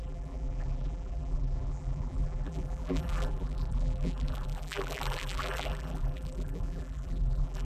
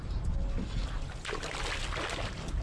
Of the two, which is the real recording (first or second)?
second